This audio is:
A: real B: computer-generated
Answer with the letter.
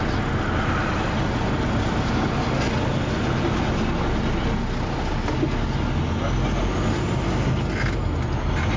A